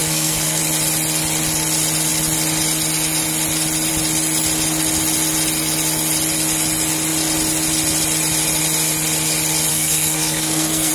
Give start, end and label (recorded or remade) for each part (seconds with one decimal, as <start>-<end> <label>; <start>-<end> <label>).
0.0-0.6 remade; 0.6-9.7 recorded; 9.7-10.9 remade